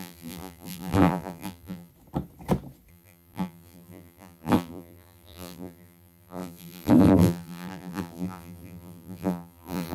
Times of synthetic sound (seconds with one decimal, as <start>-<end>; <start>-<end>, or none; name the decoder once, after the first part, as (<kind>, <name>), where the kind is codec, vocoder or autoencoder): 0.0-1.9 (vocoder, BigVGAN v2); 2.9-9.9